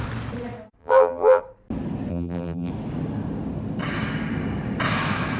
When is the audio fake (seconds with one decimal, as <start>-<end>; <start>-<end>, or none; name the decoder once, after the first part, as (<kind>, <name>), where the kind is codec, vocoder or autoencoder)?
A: 0.8-1.4 (vocoder, BigVGAN v2); 2.1-2.7